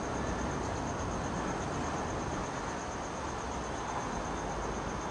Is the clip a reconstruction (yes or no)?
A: no